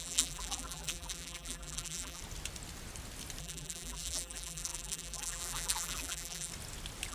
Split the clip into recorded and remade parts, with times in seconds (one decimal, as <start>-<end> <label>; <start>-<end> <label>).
0.0-2.2 remade; 2.2-3.4 recorded; 3.4-6.5 remade; 6.5-7.1 recorded